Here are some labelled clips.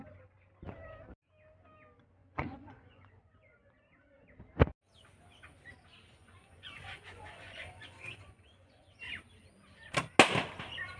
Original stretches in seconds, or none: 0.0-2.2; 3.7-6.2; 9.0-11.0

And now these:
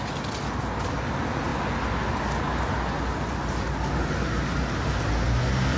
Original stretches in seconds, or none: 0.0-5.8

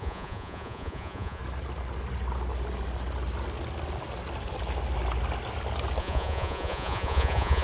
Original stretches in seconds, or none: 1.4-6.0

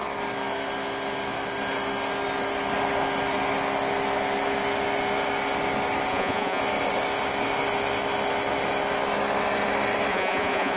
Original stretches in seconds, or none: 0.0-6.1; 6.6-10.1

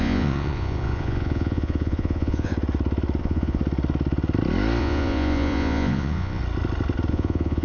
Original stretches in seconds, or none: 2.5-3.2; 3.6-4.8; 6.4-7.1

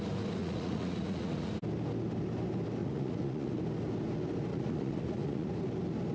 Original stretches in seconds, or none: 0.0-0.4; 1.5-2.8; 3.6-4.5; 5.5-6.1

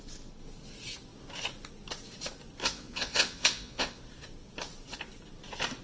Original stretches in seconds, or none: 0.0-2.6; 4.0-5.8